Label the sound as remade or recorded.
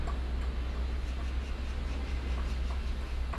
recorded